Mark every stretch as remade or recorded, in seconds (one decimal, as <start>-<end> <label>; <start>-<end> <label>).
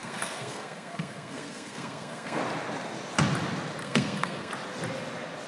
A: 0.0-2.4 remade; 2.4-3.8 recorded; 3.8-4.5 remade; 4.5-5.5 recorded